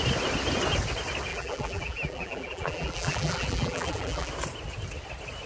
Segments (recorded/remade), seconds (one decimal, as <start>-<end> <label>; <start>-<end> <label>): 0.0-1.3 recorded; 1.3-4.3 remade; 4.3-5.5 recorded